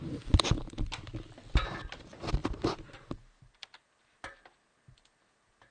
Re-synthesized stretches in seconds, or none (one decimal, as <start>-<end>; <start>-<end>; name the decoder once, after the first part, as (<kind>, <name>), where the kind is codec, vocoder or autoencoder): none